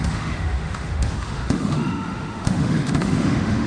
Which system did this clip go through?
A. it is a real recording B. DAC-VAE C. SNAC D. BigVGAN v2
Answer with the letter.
B